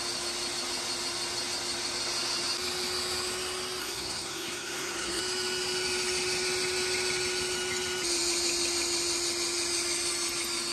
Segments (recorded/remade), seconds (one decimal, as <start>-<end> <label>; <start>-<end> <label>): 0.0-3.8 recorded; 3.8-5.2 remade; 5.2-10.7 recorded